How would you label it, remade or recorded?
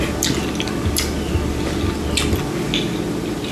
recorded